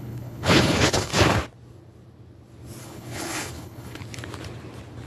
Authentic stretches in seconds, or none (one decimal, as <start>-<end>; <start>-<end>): 1.1-2.8; 4.0-5.1